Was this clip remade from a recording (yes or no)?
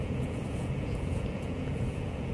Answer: yes